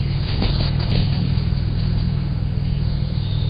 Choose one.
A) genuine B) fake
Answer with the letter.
B